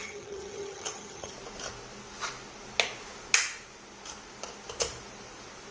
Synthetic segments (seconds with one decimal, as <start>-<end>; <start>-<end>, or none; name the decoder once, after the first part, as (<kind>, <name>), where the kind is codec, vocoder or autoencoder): 0.0-1.3 (vocoder, HiFi-GAN)